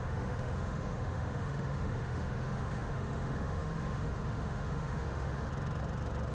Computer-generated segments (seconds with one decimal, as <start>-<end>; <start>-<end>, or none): 0.0-5.5